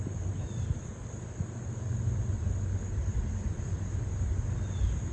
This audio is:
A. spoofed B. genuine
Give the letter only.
B